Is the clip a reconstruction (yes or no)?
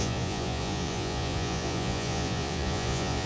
yes